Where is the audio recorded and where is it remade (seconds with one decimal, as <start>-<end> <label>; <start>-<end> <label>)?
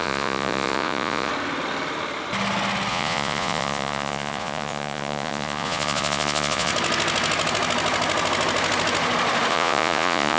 0.0-1.3 remade; 1.3-2.9 recorded; 2.9-6.7 remade; 6.7-9.5 recorded; 9.5-10.4 remade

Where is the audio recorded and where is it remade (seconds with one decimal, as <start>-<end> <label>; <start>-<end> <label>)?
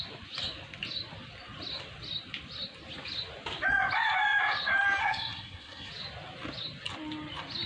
0.0-5.0 recorded; 5.0-5.9 remade; 5.9-7.7 recorded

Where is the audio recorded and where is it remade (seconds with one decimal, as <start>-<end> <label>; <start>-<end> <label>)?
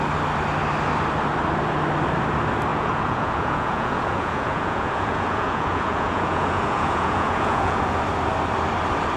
0.0-2.7 recorded; 2.7-8.0 remade; 8.0-9.2 recorded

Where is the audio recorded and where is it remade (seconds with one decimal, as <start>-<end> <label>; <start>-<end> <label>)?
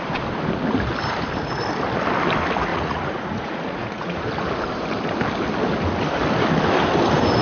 0.0-2.7 recorded; 2.7-4.2 remade; 4.2-7.4 recorded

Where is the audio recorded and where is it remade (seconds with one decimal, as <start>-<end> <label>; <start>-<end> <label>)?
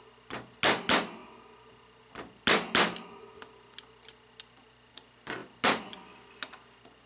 0.0-7.1 recorded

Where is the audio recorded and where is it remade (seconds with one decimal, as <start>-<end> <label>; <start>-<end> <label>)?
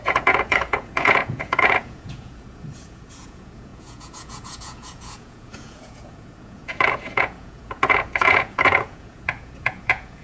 0.0-10.2 remade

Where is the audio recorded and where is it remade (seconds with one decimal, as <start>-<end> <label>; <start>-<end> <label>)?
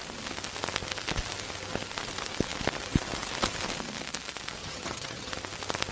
0.0-4.6 recorded; 4.6-5.3 remade; 5.3-5.9 recorded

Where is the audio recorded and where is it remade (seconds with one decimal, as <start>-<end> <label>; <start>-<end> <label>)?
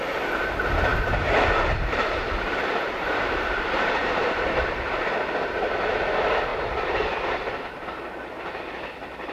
0.0-0.9 recorded; 0.9-5.9 remade; 5.9-6.5 recorded; 6.5-7.1 remade; 7.1-9.3 recorded